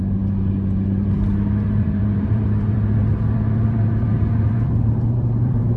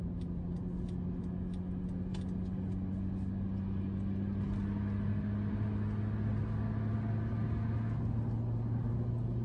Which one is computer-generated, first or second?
first